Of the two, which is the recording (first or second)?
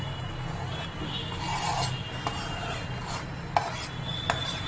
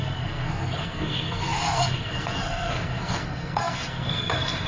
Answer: first